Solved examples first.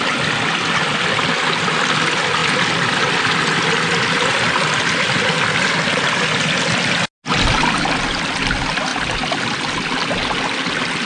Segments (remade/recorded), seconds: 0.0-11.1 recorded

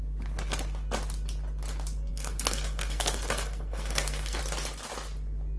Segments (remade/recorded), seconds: 0.0-2.1 recorded; 2.1-4.4 remade; 4.4-5.6 recorded

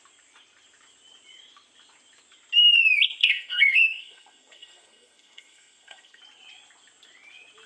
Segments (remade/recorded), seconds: 0.0-3.2 recorded; 3.2-6.2 remade; 6.2-7.7 recorded

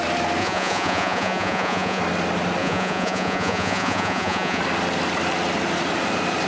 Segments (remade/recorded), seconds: 0.0-0.4 recorded; 0.4-2.0 remade; 2.0-2.6 recorded; 2.6-4.6 remade; 4.6-6.5 recorded

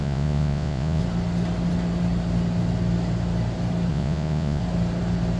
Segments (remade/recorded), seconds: 0.0-1.0 remade; 1.0-3.9 recorded; 3.9-4.6 remade; 4.6-5.4 recorded

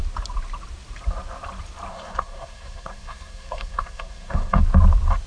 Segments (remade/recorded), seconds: 0.0-1.9 recorded; 1.9-4.6 remade; 4.6-5.3 recorded

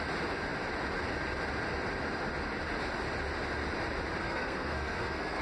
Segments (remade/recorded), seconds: 0.0-4.2 recorded; 4.2-5.4 remade